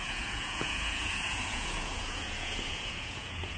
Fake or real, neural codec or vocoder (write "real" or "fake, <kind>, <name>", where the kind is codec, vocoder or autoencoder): fake, vocoder, Vocos